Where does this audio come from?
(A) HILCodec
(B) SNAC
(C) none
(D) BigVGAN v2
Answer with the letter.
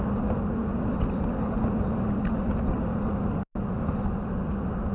C